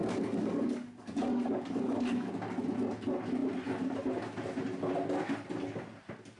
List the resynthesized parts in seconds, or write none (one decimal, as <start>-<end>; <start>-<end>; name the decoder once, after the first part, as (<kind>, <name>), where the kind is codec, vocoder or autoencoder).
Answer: 0.0-2.3 (codec, DAC)